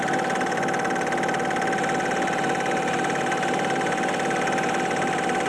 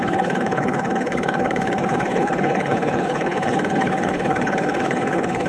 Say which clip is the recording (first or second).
first